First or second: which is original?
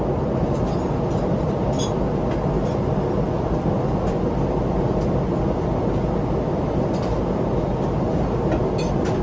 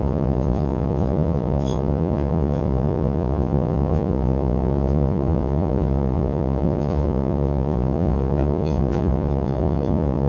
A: first